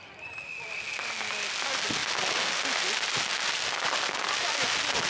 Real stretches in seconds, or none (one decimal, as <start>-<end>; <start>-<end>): 0.0-5.1